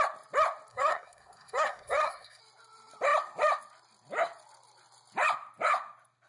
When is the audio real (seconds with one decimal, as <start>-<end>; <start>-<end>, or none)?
0.0-0.7; 2.4-6.3